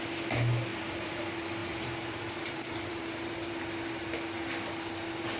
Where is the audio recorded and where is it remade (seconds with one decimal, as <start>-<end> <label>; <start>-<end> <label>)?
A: 0.0-0.7 recorded; 0.7-1.2 remade; 1.2-1.6 recorded; 1.6-3.5 remade; 3.5-5.4 recorded